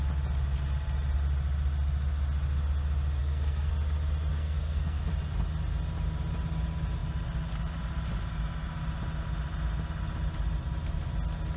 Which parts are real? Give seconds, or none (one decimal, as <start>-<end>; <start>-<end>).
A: 0.0-3.2; 3.7-4.3; 5.0-11.6